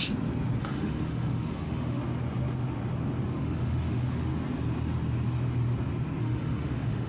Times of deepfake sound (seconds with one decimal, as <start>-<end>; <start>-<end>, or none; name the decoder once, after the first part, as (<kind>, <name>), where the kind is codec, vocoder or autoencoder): 0.6-2.0 (autoencoder, DAC-VAE); 3.4-4.3; 6.2-7.1